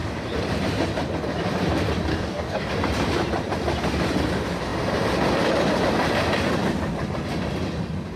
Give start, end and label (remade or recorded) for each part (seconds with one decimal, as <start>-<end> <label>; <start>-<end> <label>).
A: 0.0-2.1 recorded; 2.1-2.7 remade; 2.7-8.2 recorded